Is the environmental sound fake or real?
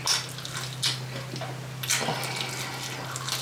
real